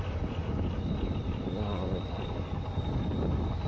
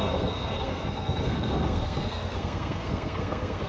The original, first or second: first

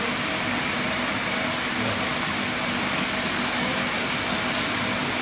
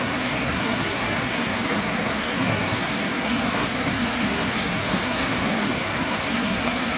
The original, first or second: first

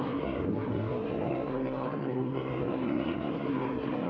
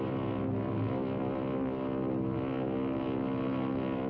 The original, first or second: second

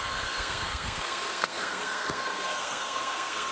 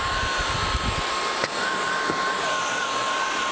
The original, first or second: second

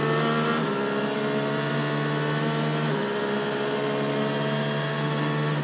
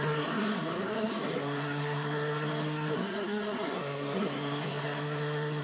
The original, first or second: first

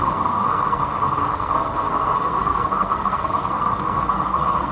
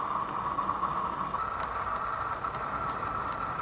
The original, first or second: second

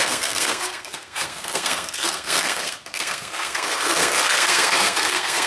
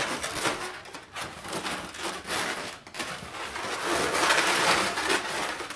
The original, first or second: second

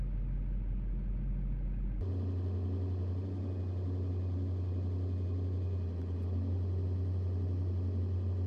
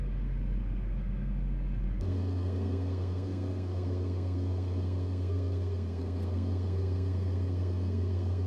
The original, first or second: first